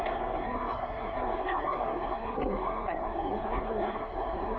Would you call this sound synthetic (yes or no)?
yes